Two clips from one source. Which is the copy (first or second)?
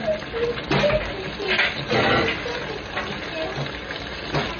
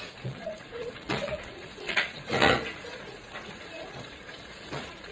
second